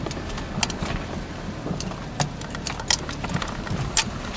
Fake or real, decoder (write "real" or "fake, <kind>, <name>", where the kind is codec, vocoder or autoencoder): real